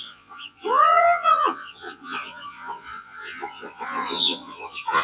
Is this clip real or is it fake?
fake